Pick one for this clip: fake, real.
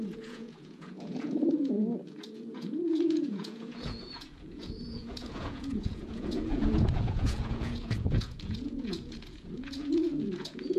fake